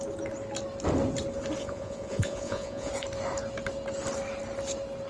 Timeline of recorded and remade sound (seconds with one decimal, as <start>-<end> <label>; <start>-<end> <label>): 0.0-1.6 recorded; 1.6-2.9 remade; 2.9-5.1 recorded